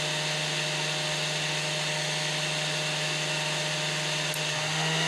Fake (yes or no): no